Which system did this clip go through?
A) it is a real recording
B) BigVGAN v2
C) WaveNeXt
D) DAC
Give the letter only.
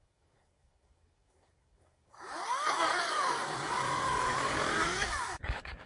D